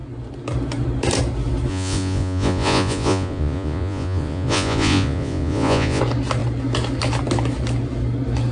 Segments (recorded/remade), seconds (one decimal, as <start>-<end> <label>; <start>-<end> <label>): 0.0-1.7 recorded; 1.7-6.0 remade; 6.0-8.5 recorded